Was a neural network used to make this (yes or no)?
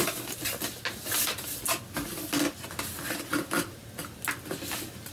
no